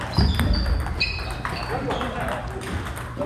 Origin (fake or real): real